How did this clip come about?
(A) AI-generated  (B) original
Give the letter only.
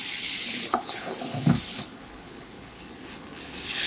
A